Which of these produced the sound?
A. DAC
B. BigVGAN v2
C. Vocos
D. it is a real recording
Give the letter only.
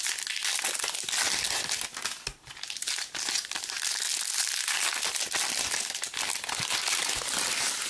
D